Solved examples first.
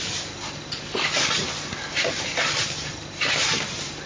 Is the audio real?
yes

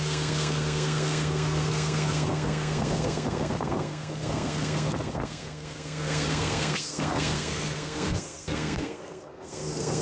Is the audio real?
no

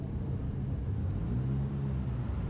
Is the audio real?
yes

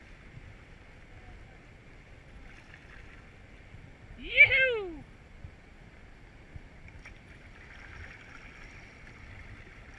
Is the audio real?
yes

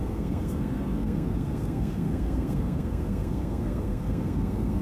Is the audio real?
no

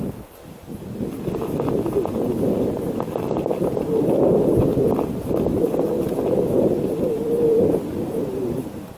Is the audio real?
yes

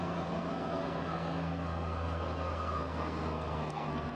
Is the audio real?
no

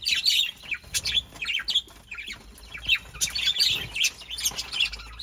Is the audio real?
yes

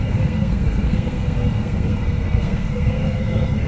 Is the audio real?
no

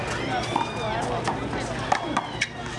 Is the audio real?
yes